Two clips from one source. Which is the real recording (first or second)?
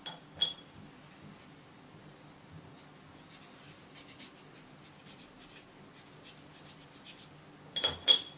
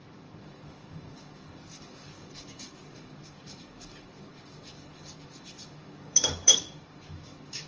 first